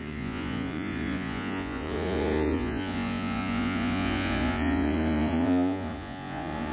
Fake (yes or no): yes